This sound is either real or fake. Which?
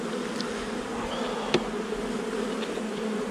real